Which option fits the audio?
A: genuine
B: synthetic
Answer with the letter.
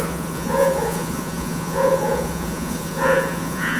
B